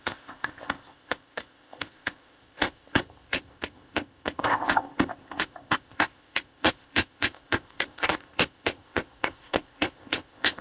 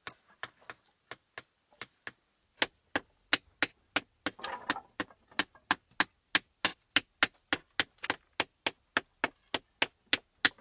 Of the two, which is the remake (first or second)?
first